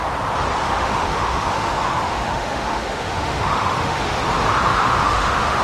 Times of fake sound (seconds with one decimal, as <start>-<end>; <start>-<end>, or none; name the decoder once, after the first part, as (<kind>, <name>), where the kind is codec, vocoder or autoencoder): 0.6-4.0 (autoencoder, DAC-VAE); 4.7-5.6